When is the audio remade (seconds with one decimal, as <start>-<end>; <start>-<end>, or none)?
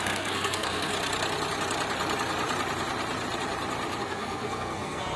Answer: 0.0-0.9; 4.0-5.2